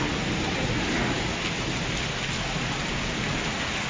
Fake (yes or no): no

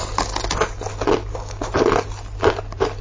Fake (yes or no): no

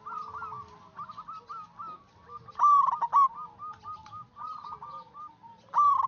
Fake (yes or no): no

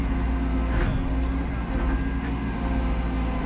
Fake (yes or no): no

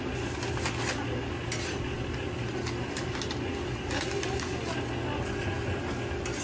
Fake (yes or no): no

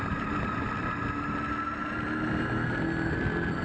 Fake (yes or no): no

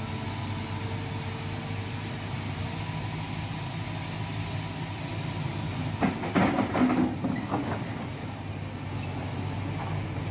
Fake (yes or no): no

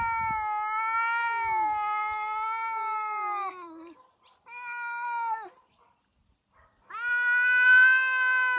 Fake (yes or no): no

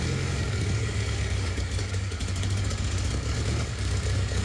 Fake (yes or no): yes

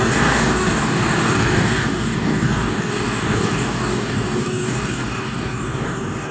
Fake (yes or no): yes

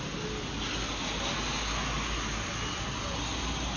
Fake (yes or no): no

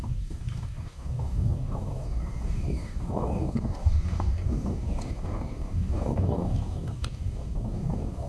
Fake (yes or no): yes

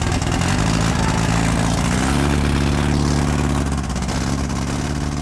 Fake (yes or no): no